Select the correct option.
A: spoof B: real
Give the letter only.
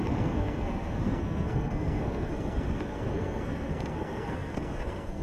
A